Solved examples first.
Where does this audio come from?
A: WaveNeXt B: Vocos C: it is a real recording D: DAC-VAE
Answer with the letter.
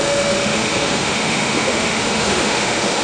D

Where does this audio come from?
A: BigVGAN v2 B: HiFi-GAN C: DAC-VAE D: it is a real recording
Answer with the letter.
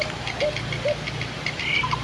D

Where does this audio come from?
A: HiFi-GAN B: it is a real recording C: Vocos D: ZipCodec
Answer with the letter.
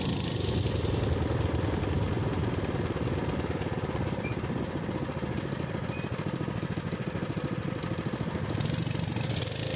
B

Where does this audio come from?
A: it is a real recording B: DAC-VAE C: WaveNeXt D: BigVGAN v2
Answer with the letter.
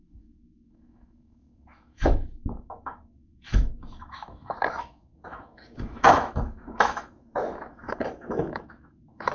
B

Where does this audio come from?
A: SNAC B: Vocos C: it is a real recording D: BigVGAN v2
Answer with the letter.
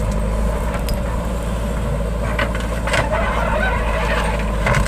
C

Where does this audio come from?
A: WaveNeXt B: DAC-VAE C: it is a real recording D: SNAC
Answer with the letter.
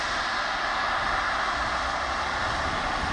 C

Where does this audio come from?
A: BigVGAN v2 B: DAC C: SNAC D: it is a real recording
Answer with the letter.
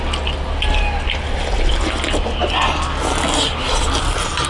D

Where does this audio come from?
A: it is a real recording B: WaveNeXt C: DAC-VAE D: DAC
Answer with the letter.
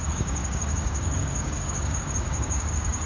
D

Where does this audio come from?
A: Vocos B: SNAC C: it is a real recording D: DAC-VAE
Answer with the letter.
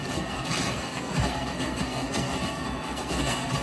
B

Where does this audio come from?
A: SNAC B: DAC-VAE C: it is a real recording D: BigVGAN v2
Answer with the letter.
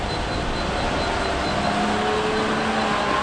C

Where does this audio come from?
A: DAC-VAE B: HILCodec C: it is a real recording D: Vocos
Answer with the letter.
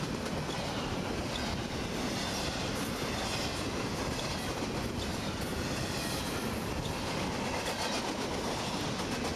C